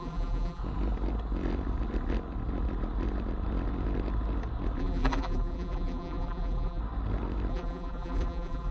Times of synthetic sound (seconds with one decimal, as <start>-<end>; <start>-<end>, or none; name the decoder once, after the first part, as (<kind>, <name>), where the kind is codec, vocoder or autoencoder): 0.0-0.6 (vocoder, BigVGAN v2); 4.8-6.8; 7.5-8.7